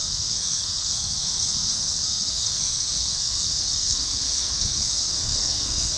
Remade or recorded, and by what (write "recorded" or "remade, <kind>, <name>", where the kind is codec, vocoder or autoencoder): remade, codec, SNAC